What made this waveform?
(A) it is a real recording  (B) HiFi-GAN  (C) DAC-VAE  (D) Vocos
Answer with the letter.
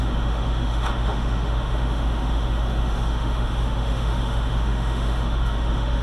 C